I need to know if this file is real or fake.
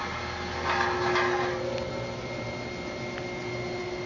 real